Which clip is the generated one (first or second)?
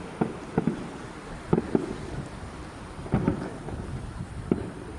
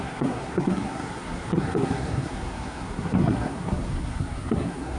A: second